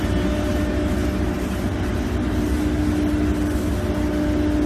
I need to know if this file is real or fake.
real